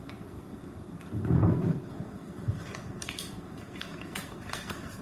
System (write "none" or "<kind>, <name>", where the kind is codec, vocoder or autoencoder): codec, SNAC